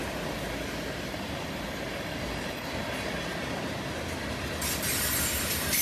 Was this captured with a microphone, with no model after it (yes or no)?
yes